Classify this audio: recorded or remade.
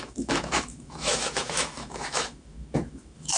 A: remade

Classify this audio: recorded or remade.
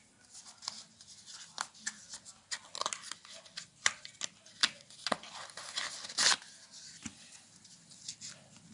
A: recorded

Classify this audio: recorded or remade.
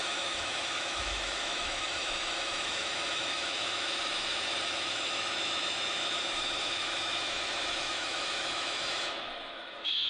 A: remade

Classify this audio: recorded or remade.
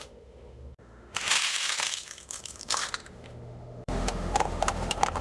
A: remade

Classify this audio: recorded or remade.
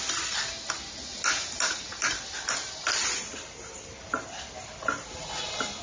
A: recorded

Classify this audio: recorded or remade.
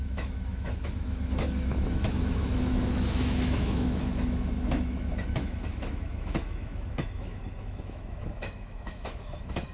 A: remade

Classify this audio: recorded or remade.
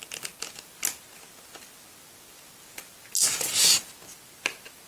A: recorded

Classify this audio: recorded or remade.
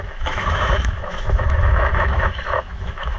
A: remade